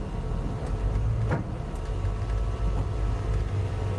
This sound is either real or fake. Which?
real